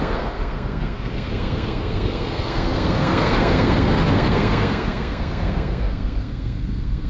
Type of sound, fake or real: fake